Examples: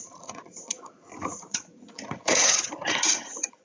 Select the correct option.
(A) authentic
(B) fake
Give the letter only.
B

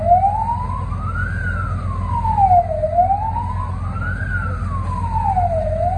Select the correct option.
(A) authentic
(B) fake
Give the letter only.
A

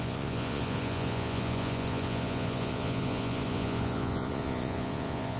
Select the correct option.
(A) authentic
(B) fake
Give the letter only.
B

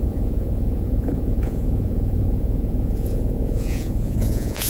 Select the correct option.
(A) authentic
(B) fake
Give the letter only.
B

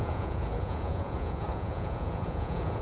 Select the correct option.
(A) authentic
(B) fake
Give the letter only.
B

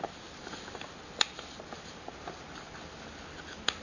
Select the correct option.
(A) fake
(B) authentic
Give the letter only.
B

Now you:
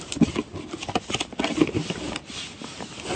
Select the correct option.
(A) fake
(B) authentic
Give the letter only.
B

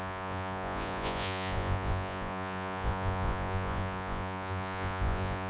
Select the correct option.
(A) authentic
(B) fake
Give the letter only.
B